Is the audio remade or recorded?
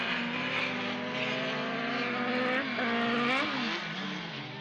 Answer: recorded